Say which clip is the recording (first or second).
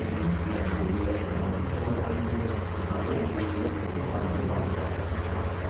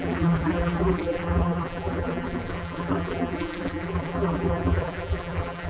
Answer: first